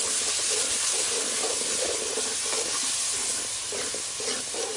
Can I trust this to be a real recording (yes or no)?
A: yes